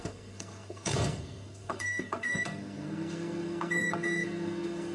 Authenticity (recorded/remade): remade